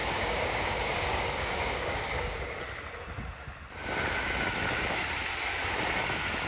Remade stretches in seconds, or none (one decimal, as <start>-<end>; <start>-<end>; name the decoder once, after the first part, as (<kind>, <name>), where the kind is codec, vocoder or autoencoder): 0.0-2.6 (codec, DAC)